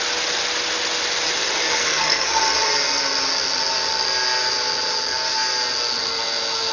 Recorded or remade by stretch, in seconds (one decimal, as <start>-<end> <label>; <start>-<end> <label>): 0.0-1.8 recorded; 1.8-2.4 remade; 2.4-6.7 recorded